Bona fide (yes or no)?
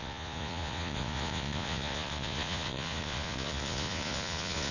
no